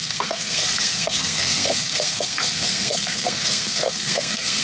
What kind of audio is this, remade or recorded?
remade